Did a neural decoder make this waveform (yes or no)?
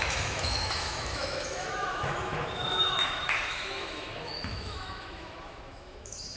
yes